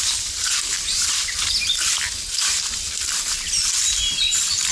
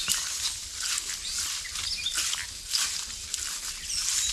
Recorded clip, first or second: second